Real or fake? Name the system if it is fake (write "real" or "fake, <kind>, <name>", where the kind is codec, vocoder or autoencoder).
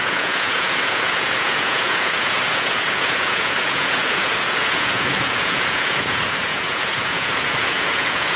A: fake, vocoder, Vocos